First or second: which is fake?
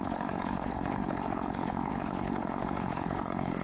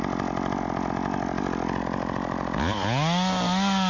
first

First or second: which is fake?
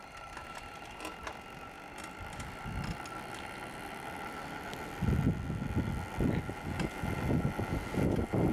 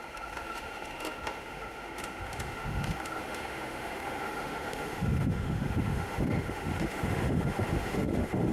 second